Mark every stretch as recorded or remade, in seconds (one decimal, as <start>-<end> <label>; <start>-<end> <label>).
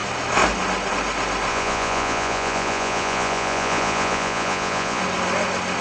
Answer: 0.0-1.5 recorded; 1.5-5.0 remade; 5.0-5.8 recorded